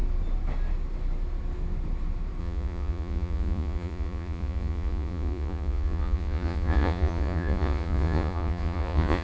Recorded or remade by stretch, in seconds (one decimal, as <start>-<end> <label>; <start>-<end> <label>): 0.0-2.4 recorded; 2.4-9.2 remade